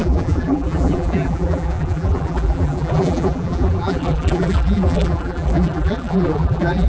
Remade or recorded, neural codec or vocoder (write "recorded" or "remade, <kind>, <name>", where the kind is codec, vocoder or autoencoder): remade, vocoder, BigVGAN v2